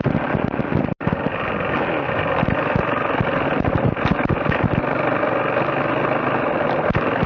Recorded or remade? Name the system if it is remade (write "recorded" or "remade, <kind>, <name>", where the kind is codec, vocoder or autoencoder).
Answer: recorded